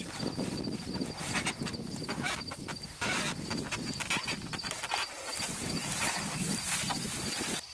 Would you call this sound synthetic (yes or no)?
no